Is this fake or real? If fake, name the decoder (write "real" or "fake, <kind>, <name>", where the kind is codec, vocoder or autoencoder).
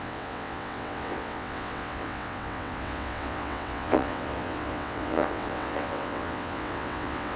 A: fake, vocoder, WaveNeXt